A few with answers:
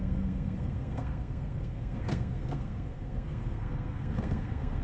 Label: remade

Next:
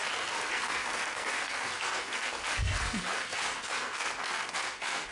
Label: remade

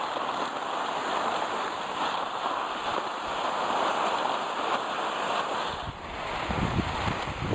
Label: recorded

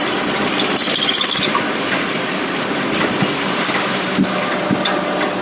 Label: recorded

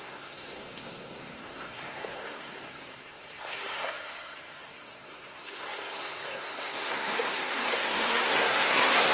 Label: remade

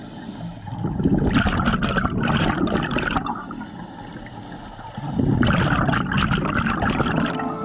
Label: recorded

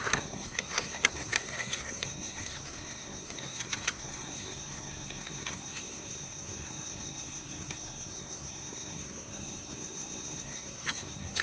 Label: remade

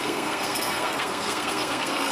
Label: remade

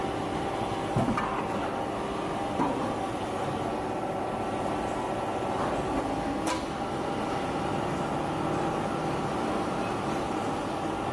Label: recorded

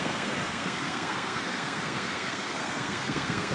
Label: remade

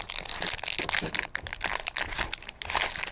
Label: recorded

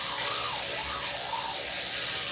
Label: recorded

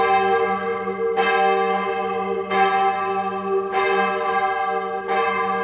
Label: recorded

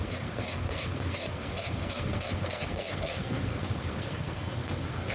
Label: remade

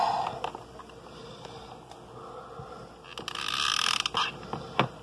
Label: recorded